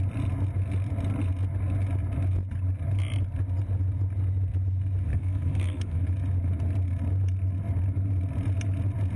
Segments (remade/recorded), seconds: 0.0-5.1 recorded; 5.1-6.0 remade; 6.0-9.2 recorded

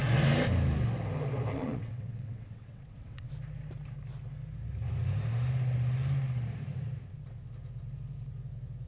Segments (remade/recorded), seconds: 0.0-1.5 recorded; 1.5-3.3 remade; 3.3-8.9 recorded

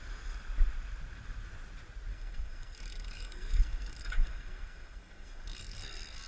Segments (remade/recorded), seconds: 0.0-2.1 recorded; 2.1-6.3 remade

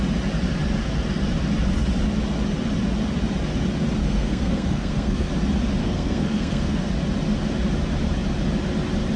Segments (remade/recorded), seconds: 0.0-4.0 recorded; 4.0-5.3 remade; 5.3-5.8 recorded; 5.8-6.9 remade; 6.9-9.2 recorded

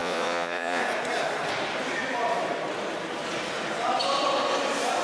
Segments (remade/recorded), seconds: 0.0-0.8 remade; 0.8-5.0 recorded

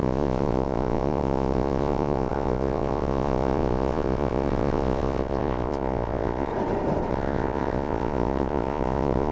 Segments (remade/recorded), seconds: 0.0-6.5 remade; 6.5-7.1 recorded; 7.1-9.3 remade

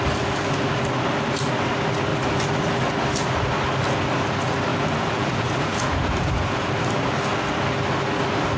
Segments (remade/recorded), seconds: 0.0-4.7 recorded; 4.7-6.7 remade; 6.7-8.6 recorded

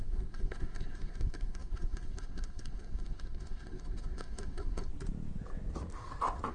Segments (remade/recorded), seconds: 0.0-4.9 remade; 4.9-6.5 recorded